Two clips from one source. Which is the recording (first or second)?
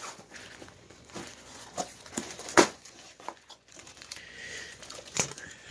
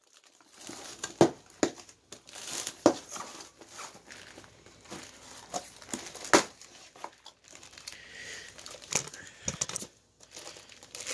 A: second